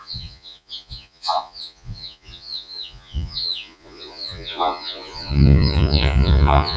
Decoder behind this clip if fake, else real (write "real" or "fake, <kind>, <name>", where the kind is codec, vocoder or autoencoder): fake, vocoder, Vocos